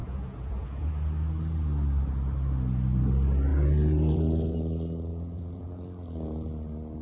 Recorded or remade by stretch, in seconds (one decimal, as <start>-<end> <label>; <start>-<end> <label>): 0.0-0.9 remade; 0.9-3.5 recorded; 3.5-4.6 remade; 4.6-5.1 recorded; 5.1-5.6 remade; 5.6-7.0 recorded